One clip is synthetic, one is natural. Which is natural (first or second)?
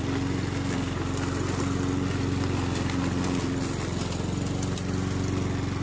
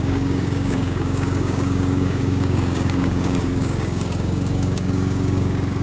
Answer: first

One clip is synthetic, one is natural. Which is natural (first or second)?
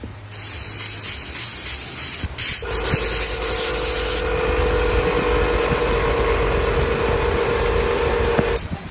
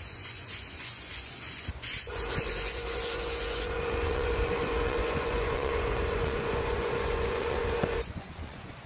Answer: first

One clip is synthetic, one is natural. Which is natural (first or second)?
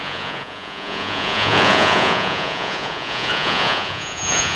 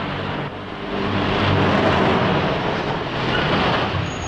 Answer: second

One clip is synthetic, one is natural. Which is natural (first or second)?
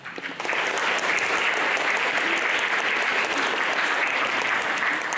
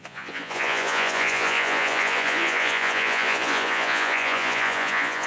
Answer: first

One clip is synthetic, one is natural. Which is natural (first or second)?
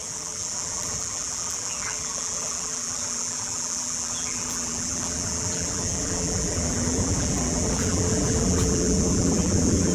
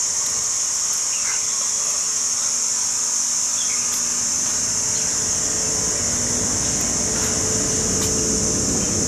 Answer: second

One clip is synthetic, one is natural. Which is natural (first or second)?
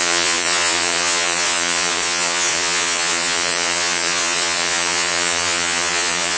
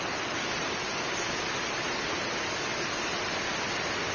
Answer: second